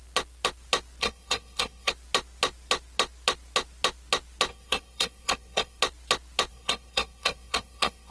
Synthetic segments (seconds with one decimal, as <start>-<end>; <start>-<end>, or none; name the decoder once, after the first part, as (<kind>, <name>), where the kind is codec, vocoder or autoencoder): 1.0-1.9 (codec, SNAC); 4.5-5.8; 6.5-8.1